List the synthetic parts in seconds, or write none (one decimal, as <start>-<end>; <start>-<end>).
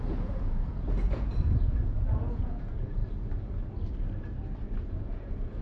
0.0-3.0; 4.9-5.6